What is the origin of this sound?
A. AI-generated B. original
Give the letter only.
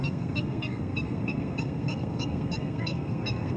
A